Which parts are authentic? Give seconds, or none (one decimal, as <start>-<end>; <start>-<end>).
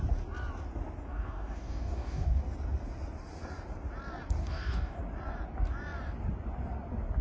0.0-1.1; 2.4-4.4; 5.0-7.2